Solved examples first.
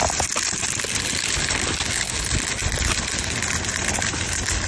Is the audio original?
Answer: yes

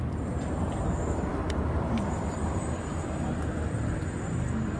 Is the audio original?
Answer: no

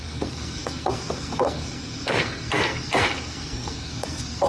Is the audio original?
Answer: no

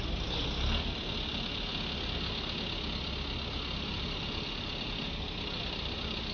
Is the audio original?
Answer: yes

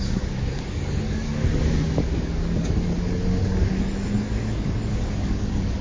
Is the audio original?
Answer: no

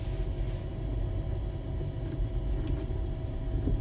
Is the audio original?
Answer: yes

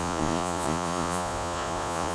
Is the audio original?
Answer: no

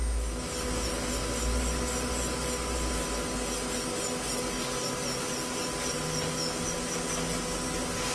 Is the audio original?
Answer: yes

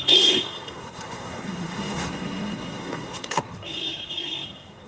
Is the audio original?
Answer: no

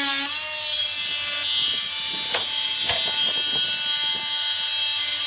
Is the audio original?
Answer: yes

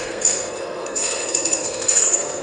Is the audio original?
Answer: no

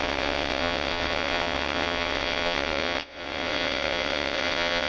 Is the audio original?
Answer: no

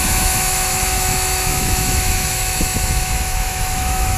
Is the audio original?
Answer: no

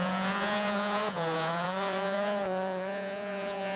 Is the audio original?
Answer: no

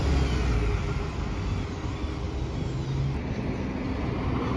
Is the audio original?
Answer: yes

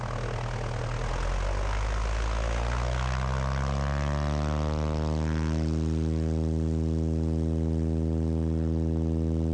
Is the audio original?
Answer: yes